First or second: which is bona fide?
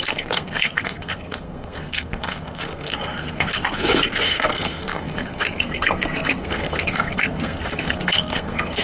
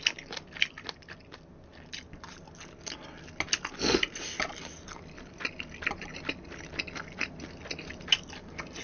second